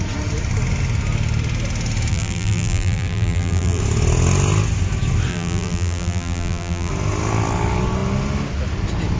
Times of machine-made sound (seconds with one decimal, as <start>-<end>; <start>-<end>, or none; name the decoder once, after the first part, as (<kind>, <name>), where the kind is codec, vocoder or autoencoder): 2.1-3.8 (vocoder, BigVGAN v2); 5.3-6.9